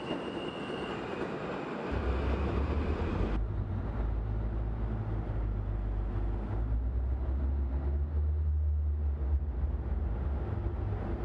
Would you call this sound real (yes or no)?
yes